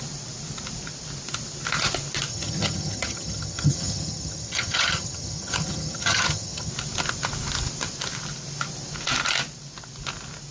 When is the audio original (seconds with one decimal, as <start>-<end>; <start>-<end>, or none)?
0.0-2.3; 6.7-10.5